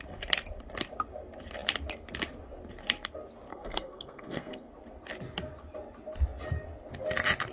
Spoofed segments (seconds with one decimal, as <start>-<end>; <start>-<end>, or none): 3.5-4.7